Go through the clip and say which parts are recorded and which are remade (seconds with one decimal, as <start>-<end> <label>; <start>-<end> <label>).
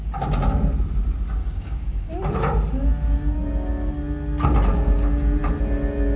0.0-1.4 recorded; 1.4-2.1 remade; 2.1-6.2 recorded